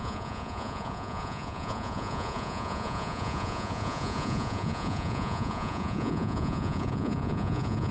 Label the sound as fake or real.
fake